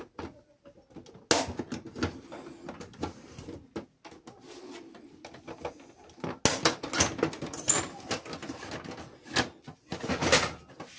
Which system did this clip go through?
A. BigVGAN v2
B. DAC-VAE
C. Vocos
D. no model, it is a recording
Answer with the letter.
D